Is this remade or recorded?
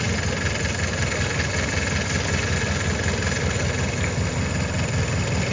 recorded